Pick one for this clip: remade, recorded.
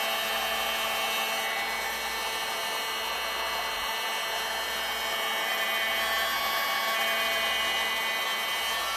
recorded